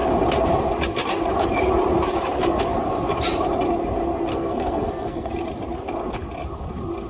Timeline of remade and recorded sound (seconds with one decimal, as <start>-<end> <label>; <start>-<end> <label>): 0.0-4.3 recorded; 4.3-5.3 remade; 5.3-7.1 recorded